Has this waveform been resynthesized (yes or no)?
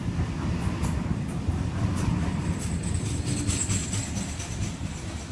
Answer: no